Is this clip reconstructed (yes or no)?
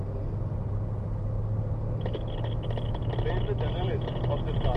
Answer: no